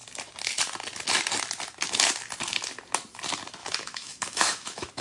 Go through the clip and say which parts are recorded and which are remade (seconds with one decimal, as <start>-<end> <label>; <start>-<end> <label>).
0.0-3.6 recorded; 3.6-5.0 remade